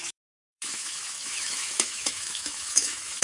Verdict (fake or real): fake